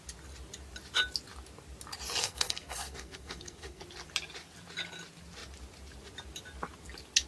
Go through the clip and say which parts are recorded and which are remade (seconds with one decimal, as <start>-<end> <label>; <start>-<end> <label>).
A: 0.0-2.2 recorded; 2.2-3.8 remade; 3.8-7.3 recorded